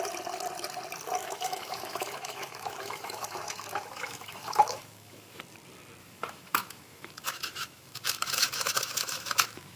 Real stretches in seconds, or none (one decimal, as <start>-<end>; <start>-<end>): 0.0-1.2; 5.4-6.0